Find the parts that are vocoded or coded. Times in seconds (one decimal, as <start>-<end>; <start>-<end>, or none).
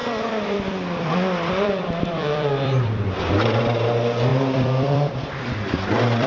0.0-3.6; 4.3-6.3